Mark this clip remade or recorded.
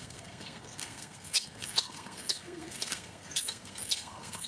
remade